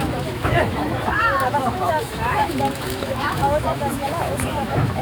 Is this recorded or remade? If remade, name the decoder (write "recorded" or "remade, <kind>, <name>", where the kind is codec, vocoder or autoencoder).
remade, autoencoder, DAC-VAE